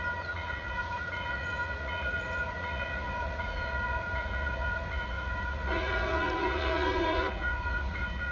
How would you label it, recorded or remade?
remade